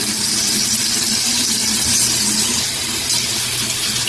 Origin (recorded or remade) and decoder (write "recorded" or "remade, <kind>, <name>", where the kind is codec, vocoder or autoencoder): recorded